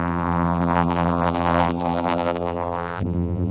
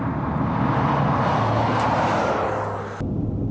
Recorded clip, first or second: second